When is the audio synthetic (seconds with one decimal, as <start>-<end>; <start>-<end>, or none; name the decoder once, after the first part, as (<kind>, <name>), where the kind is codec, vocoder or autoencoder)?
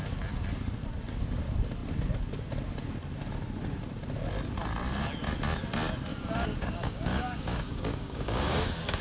6.1-9.0 (codec, DAC)